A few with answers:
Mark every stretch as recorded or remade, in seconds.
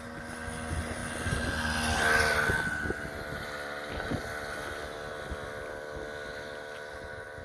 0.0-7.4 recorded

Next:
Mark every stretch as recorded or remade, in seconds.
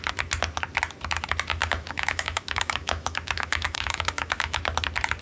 0.0-1.5 recorded; 1.5-4.6 remade; 4.6-5.2 recorded